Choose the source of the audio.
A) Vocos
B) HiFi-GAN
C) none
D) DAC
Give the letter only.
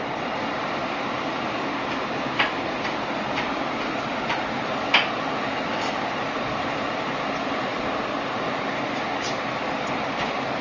C